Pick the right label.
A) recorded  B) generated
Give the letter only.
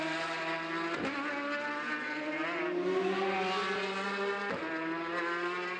A